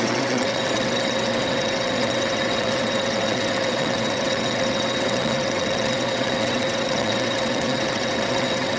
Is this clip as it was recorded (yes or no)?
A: no